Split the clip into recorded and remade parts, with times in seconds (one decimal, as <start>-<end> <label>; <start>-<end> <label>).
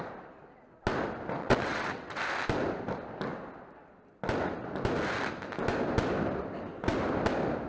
0.0-1.4 recorded; 1.4-2.2 remade; 2.2-7.7 recorded